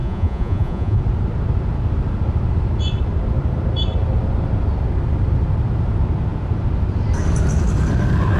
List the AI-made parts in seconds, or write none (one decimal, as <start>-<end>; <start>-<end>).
0.0-1.0